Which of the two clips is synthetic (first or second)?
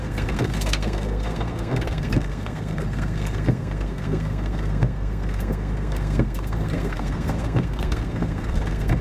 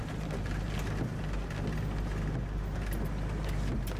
first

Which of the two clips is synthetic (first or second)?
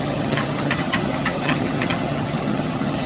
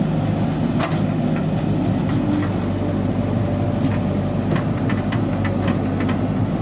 first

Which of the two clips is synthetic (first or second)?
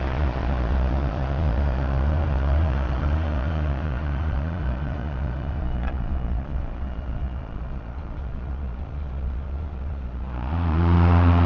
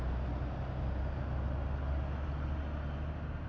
first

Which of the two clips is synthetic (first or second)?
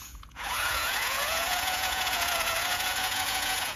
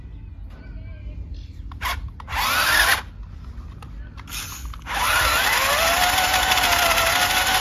first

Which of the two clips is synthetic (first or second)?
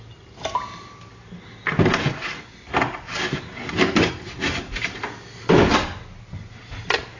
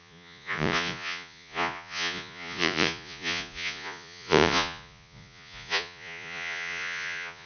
second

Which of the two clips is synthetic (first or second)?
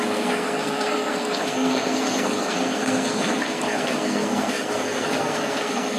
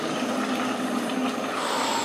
first